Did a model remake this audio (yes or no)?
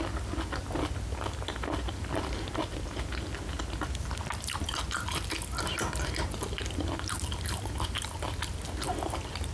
no